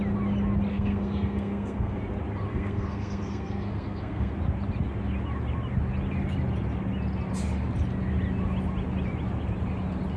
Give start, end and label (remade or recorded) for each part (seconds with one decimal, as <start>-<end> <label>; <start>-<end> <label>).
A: 0.0-0.7 recorded; 0.7-2.0 remade; 2.0-2.5 recorded; 2.5-4.3 remade; 4.3-10.2 recorded